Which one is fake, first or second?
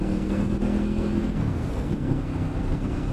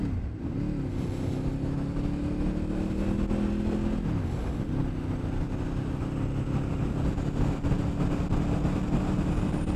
first